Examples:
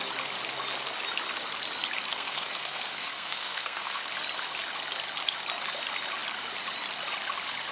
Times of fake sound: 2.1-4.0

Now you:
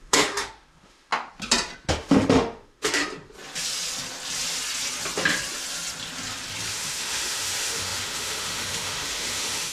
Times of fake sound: 0.0-1.1; 1.9-3.0; 6.7-9.7

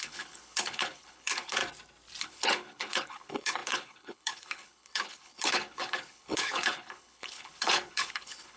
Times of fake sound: 0.0-1.6; 2.2-8.6

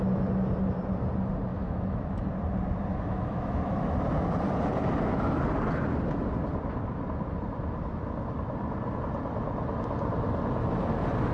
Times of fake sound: 1.5-2.3; 2.9-3.9